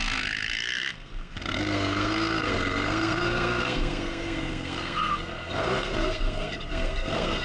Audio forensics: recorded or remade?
remade